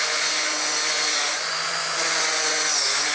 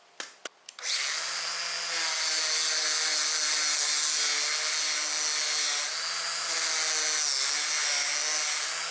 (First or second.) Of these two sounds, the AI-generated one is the first